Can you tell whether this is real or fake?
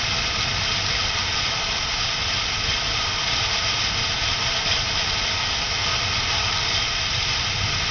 real